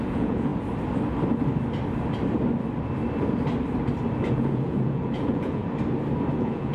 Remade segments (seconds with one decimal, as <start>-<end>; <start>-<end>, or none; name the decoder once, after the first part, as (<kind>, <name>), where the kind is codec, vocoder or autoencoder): 0.0-0.5 (vocoder, Vocos); 4.3-5.6; 6.3-6.7